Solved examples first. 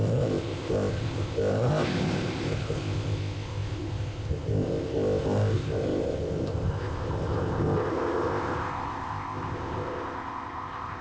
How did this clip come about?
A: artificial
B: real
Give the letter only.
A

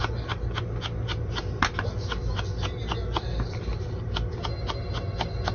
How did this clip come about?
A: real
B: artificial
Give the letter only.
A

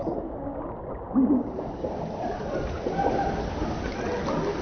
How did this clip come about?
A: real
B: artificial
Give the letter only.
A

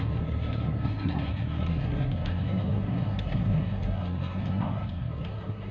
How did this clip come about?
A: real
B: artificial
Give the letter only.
B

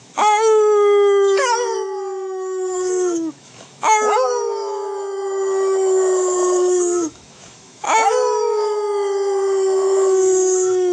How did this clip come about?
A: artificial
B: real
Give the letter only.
A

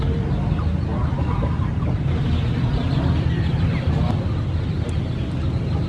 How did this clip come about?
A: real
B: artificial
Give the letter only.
A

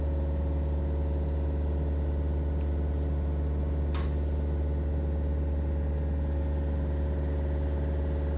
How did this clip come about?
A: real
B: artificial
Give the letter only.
A